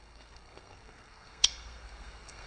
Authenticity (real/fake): fake